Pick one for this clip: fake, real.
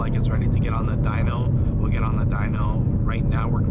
fake